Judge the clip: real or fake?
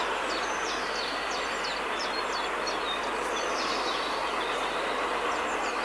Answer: real